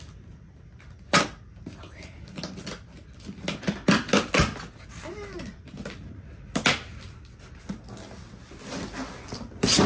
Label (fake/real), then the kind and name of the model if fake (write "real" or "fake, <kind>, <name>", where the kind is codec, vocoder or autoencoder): real